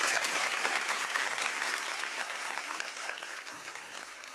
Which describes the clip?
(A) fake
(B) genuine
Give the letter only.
A